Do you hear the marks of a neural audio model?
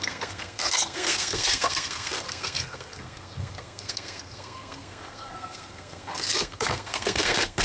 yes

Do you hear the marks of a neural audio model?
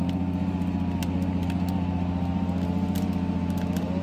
no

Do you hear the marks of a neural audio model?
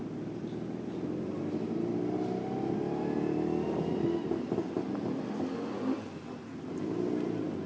no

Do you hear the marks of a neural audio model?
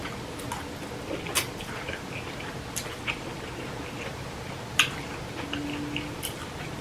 no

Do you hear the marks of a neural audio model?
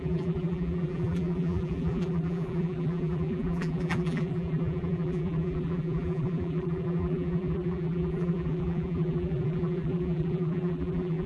yes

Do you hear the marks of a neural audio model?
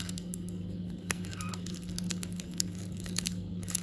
yes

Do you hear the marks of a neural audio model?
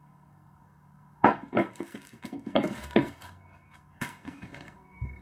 yes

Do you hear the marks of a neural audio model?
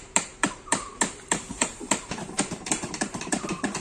yes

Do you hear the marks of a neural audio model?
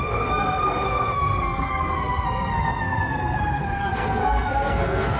yes